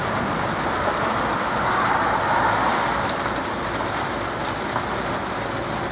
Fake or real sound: real